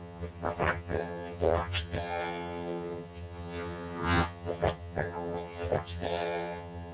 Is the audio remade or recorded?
remade